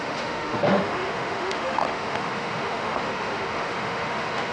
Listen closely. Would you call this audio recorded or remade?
remade